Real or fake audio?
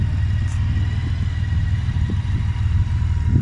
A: real